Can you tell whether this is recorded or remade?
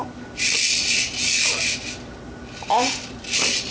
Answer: recorded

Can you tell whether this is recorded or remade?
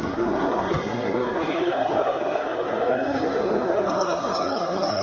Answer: remade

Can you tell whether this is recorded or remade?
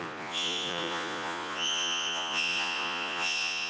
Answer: remade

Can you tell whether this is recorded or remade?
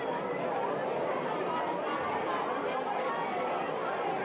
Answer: recorded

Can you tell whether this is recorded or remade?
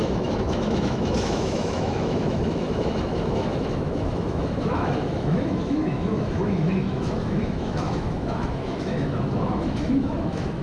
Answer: remade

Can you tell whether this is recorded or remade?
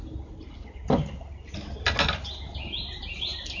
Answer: recorded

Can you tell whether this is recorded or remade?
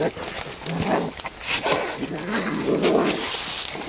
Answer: recorded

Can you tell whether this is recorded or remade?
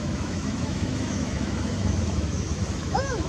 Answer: remade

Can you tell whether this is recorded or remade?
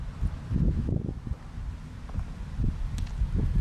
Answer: recorded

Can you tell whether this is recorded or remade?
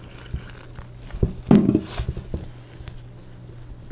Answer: recorded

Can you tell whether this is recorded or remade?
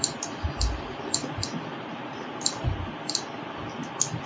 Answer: recorded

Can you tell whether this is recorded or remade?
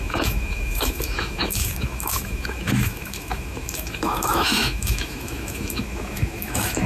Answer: remade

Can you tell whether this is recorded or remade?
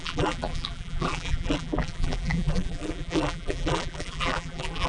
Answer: remade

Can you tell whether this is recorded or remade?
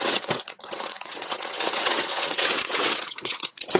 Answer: remade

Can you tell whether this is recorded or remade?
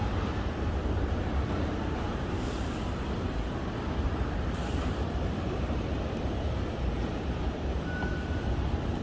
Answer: remade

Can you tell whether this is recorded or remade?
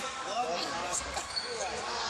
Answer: remade